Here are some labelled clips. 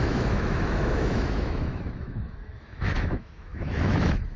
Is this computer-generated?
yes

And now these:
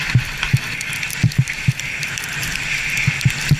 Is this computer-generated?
yes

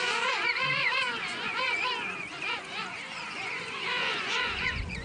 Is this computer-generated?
yes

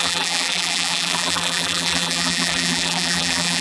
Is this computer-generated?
yes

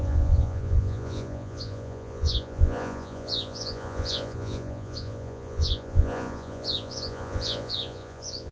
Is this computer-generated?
yes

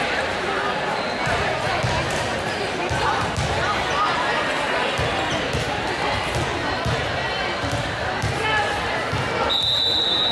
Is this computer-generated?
no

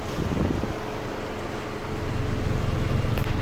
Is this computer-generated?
no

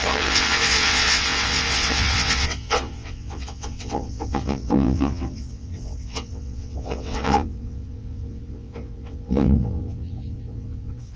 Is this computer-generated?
yes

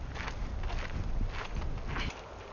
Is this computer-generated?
no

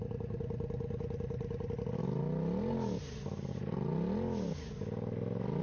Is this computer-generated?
no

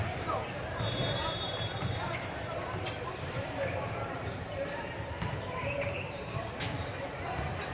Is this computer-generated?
yes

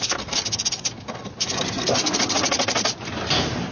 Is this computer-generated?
no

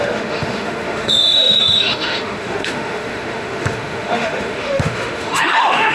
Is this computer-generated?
yes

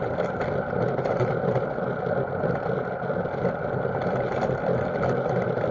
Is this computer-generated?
yes